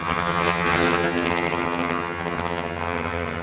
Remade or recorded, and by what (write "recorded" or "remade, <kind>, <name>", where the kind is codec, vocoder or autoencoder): remade, vocoder, HiFi-GAN